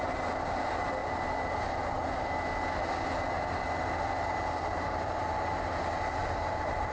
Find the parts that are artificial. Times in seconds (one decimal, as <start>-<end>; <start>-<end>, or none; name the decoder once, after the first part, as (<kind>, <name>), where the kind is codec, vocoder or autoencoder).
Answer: 5.2-5.8 (vocoder, BigVGAN v2); 6.2-6.9